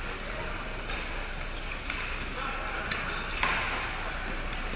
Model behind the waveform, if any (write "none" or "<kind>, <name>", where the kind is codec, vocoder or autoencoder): none